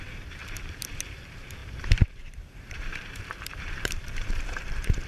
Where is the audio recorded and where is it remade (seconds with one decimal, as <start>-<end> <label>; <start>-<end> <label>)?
0.0-5.1 remade

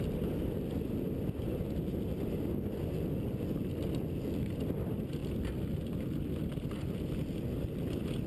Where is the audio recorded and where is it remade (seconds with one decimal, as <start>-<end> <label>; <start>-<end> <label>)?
0.0-8.3 recorded

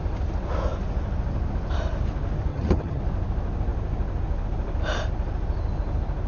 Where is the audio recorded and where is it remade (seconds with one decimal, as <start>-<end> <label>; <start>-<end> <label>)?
0.0-2.5 recorded; 2.5-3.0 remade; 3.0-6.3 recorded

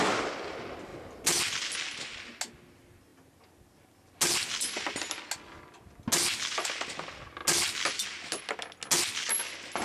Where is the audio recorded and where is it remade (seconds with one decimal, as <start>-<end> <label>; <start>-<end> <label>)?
0.0-9.8 recorded

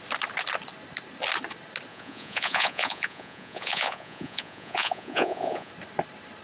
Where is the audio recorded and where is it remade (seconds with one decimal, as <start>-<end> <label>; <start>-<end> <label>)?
0.0-1.9 recorded; 1.9-5.7 remade; 5.7-6.4 recorded